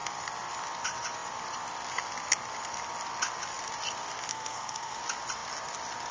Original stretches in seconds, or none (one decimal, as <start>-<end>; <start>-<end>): 0.0-4.3; 5.0-6.1